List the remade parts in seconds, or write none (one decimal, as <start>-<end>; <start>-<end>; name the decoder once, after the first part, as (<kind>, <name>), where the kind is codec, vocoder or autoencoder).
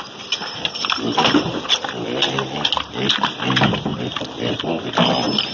none